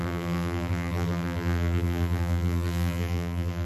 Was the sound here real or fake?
fake